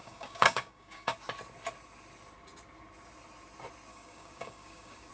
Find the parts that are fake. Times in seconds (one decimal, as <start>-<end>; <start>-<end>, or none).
0.0-1.2; 3.9-5.1